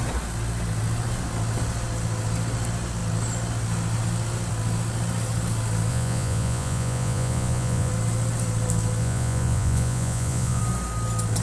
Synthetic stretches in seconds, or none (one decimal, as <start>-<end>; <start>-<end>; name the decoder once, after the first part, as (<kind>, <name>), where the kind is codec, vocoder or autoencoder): 5.9-7.9 (vocoder, Vocos); 9.0-10.6